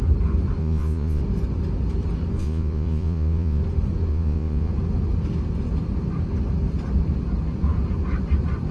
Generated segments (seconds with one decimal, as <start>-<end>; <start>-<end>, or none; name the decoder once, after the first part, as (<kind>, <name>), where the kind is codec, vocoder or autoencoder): 0.6-1.2 (vocoder, Vocos); 2.4-3.6; 4.1-4.7